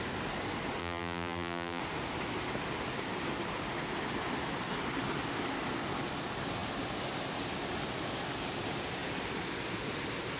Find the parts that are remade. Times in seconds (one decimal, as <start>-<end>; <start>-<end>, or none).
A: 0.8-1.8